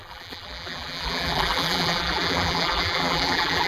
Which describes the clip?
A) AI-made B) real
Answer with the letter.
A